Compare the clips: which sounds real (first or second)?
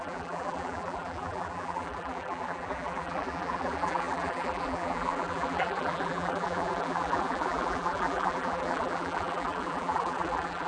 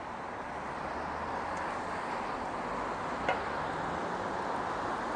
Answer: second